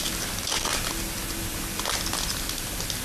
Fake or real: fake